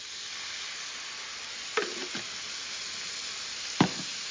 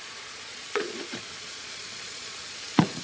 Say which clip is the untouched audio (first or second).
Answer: first